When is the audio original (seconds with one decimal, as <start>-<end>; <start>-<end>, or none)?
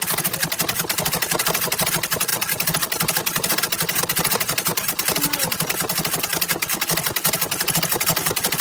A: 0.0-4.7; 6.0-8.6